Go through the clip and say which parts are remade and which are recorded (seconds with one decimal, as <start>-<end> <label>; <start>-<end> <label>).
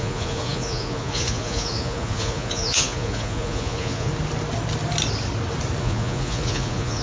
0.0-4.1 remade; 4.1-5.8 recorded; 5.8-7.0 remade